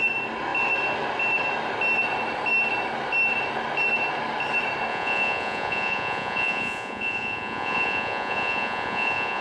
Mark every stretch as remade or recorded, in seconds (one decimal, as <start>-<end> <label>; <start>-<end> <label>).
0.0-4.9 recorded; 4.9-9.4 remade